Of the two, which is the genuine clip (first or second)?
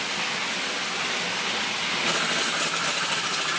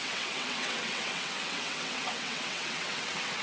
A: first